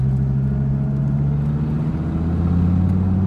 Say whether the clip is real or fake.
real